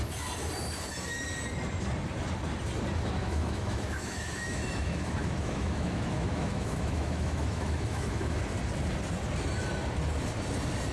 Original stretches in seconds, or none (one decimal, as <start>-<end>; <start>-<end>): 0.0-3.2; 8.4-10.9